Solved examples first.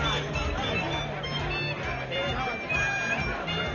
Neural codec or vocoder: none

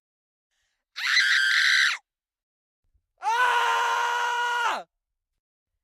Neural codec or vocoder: vocoder, BigVGAN v2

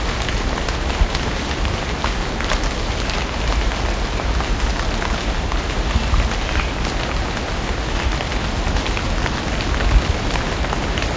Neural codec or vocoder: none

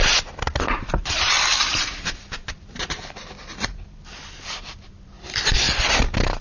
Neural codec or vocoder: none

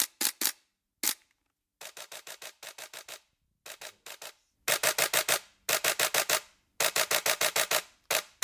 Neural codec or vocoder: none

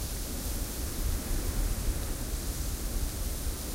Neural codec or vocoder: none